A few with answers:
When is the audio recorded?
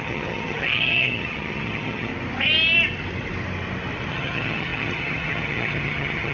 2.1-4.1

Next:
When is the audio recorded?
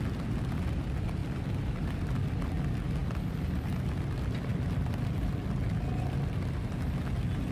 0.0-1.2; 2.6-7.5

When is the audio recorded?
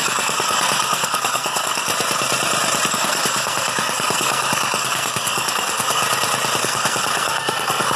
1.9-2.9; 6.0-6.6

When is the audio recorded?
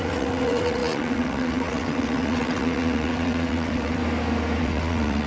4.0-4.6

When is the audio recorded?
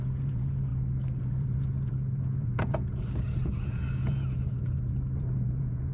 0.7-1.2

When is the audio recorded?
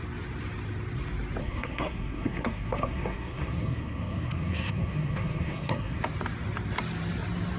0.0-1.4; 6.0-7.6